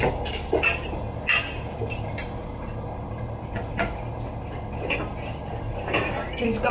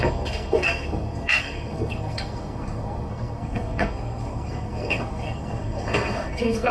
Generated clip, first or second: second